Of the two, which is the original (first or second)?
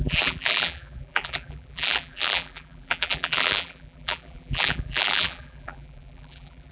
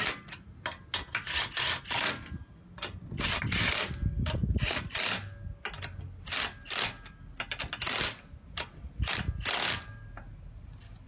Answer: second